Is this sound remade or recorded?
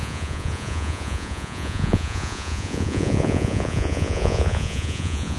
remade